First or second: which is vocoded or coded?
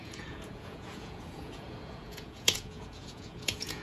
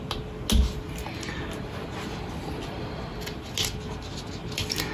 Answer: first